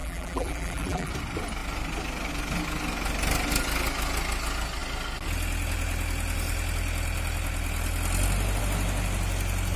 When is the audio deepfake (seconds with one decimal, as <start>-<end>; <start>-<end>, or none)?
0.0-1.1